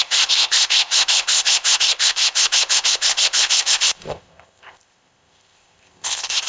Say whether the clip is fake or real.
fake